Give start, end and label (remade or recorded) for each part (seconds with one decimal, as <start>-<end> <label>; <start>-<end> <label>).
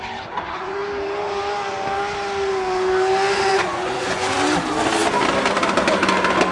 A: 0.0-3.5 recorded; 3.5-4.3 remade; 4.3-6.5 recorded